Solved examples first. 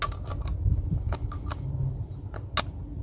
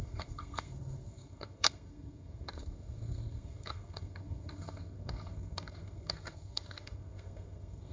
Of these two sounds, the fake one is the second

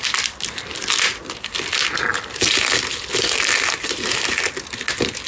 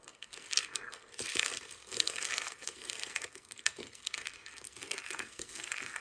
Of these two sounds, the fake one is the second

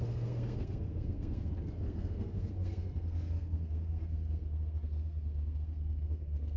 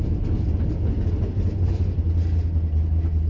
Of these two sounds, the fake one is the first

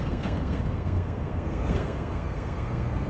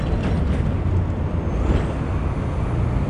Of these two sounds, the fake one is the first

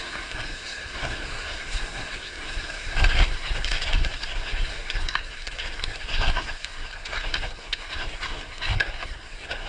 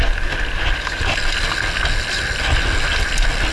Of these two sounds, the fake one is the first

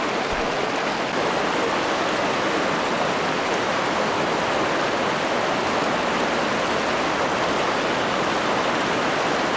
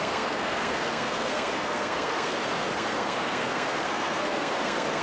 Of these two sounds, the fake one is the second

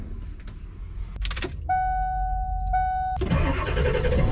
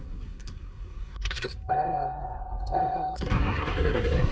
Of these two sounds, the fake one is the second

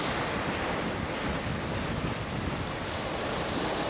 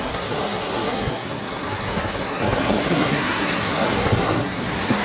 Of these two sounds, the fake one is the second